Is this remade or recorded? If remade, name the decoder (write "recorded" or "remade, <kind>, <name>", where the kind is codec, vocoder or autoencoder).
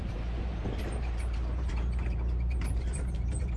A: remade, vocoder, BigVGAN v2